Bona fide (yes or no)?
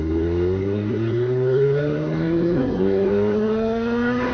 no